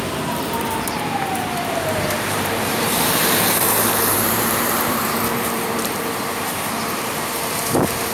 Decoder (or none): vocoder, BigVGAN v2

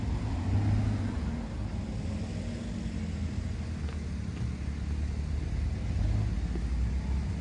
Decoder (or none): none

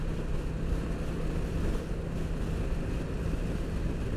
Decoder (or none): none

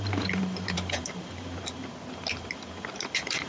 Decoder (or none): vocoder, BigVGAN v2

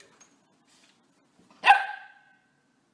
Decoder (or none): none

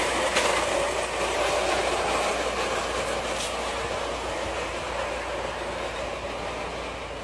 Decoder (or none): none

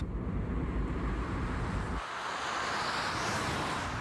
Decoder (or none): none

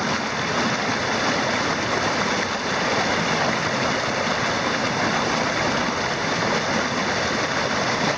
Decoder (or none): none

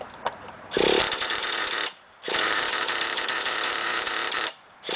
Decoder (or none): vocoder, BigVGAN v2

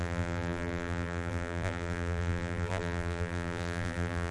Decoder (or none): vocoder, BigVGAN v2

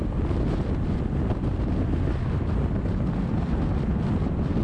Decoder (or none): none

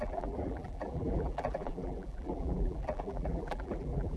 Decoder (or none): vocoder, BigVGAN v2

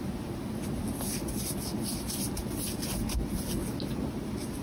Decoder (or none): none